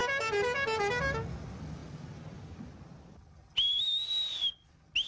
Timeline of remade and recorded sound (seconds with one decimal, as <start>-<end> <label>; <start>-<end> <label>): 0.0-5.1 recorded